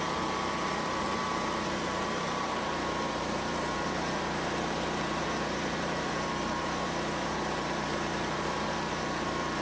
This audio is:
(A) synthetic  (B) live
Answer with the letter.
A